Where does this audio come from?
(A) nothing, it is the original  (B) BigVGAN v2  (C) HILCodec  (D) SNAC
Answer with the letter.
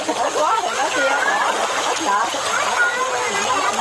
A